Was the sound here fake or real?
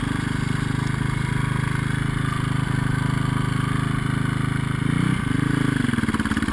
real